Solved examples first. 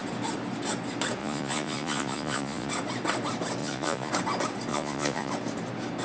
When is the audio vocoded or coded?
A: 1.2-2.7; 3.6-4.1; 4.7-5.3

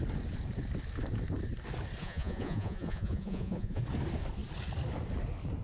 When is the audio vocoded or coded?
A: 2.0-3.8

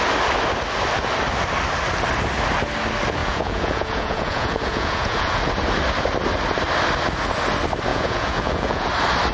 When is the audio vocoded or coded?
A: 3.2-5.4; 7.9-8.9

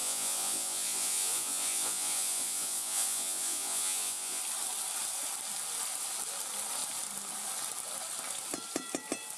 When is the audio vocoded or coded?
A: 0.0-4.4

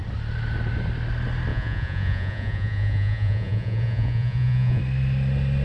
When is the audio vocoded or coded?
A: 1.5-4.8

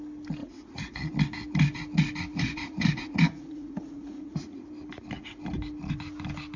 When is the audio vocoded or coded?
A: 0.4-1.1; 2.3-4.7

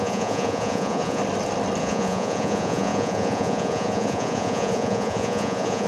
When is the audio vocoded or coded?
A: 0.0-1.2; 1.8-5.9

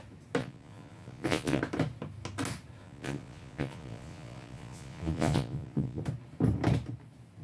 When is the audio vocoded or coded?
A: 0.4-1.6; 2.8-6.0